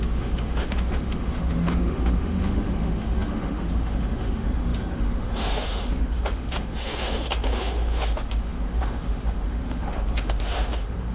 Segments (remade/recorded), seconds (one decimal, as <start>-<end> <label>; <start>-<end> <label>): 0.0-11.1 remade